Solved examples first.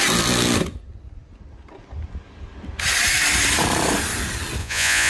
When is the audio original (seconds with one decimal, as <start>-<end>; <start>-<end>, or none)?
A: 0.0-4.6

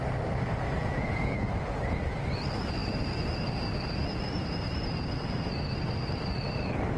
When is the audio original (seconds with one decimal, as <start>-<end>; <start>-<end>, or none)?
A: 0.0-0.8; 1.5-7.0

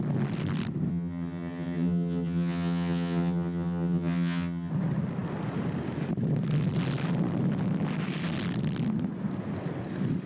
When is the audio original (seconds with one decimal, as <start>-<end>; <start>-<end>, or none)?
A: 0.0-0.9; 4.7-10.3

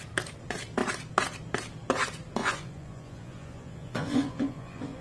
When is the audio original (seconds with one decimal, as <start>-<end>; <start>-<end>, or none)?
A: 0.0-2.4

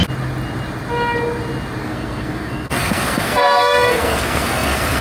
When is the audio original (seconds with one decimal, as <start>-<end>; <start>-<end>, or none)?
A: 0.0-1.8

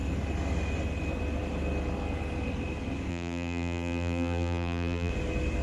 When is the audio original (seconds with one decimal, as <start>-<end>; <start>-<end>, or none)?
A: 0.0-3.1; 5.1-5.6

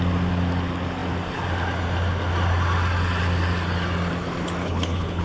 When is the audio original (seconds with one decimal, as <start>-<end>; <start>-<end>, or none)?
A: 0.0-4.6

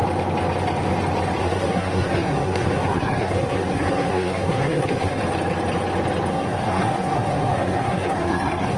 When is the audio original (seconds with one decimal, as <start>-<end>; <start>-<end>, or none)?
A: 0.0-1.4; 5.2-6.3